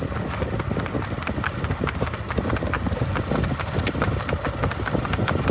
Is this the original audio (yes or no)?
yes